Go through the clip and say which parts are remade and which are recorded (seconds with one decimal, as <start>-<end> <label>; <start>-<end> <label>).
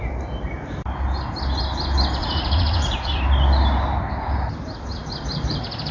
0.0-2.2 recorded; 2.2-3.2 remade; 3.2-5.9 recorded